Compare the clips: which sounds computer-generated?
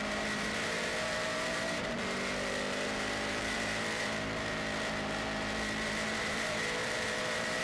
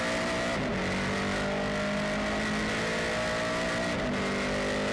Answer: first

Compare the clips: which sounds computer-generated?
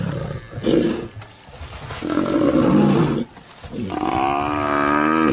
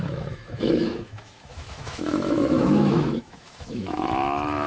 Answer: second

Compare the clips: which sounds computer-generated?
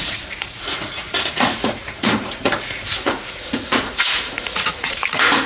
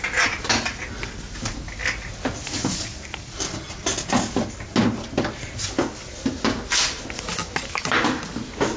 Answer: first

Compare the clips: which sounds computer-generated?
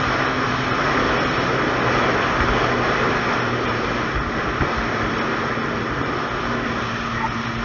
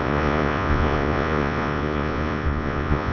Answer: second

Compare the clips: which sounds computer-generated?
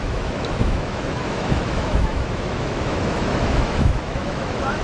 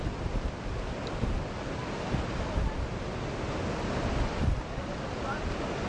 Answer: first